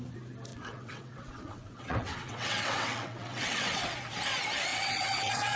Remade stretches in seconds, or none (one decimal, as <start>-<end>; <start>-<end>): 0.5-3.9; 4.7-5.6